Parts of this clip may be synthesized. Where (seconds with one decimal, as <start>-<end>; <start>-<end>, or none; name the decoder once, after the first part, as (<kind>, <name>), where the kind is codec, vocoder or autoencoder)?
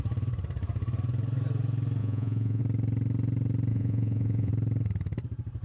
2.0-2.6 (vocoder, Vocos); 3.7-4.5